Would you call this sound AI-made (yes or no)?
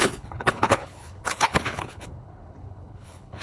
yes